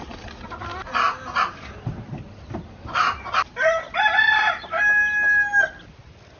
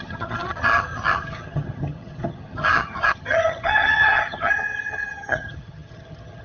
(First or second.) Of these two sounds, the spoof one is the second